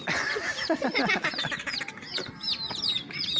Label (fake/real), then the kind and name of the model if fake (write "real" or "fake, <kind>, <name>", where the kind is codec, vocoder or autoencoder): real